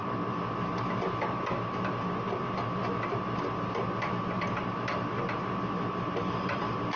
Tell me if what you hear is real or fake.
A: real